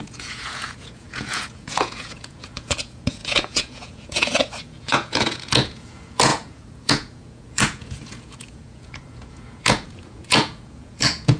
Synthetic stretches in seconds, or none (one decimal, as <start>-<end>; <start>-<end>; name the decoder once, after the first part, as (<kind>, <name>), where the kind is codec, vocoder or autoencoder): 0.0-11.4 (vocoder, Vocos)